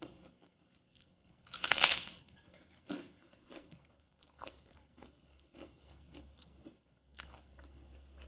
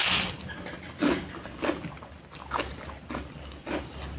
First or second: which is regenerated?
first